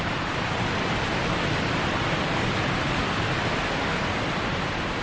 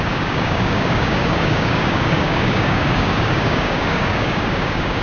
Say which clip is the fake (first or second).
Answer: second